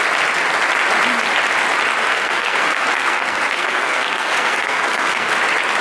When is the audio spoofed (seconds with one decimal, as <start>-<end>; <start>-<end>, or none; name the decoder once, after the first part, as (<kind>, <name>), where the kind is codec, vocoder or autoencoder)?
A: 2.0-5.3 (codec, SNAC)